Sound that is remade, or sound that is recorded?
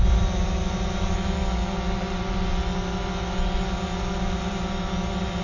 recorded